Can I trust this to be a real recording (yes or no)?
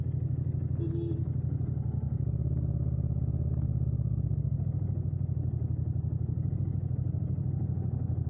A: yes